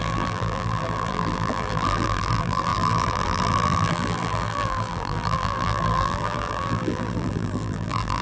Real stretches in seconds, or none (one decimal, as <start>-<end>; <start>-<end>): none